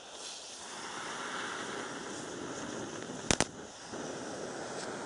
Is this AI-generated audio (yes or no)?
no